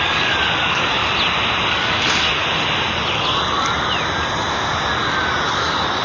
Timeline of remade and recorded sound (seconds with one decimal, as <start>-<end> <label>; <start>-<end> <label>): 0.0-1.0 remade; 1.0-1.7 recorded; 1.7-2.4 remade; 2.4-5.5 recorded; 5.5-6.0 remade